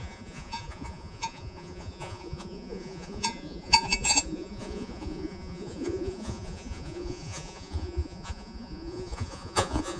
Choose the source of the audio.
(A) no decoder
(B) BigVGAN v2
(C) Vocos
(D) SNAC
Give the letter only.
C